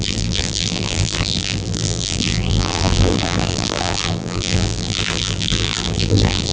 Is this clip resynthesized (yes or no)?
yes